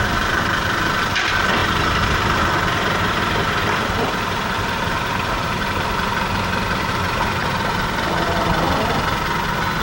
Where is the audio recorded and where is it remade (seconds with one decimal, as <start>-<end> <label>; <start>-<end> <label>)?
0.0-1.6 recorded; 1.6-6.9 remade; 6.9-7.4 recorded; 7.4-8.5 remade; 8.5-9.8 recorded